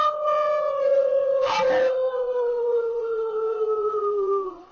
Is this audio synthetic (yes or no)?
yes